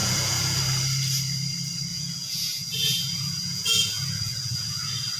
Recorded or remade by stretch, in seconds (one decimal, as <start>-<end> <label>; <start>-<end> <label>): 0.0-0.6 remade; 0.6-1.9 recorded; 1.9-5.2 remade